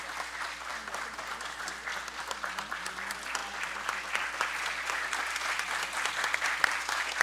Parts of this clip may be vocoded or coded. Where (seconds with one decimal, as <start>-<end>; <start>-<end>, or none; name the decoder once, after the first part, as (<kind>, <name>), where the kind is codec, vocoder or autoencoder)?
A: none